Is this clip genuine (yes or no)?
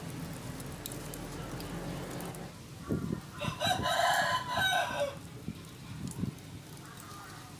yes